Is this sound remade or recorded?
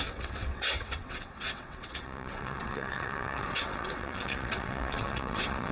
remade